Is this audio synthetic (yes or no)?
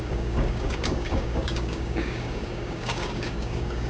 yes